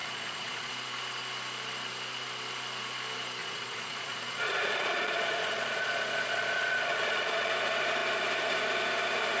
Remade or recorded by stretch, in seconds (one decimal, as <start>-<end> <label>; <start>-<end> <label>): 0.0-0.7 remade; 0.7-3.4 recorded; 3.4-7.5 remade; 7.5-9.4 recorded